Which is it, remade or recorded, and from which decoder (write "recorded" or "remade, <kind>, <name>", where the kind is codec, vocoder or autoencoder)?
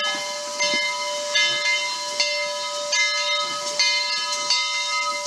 recorded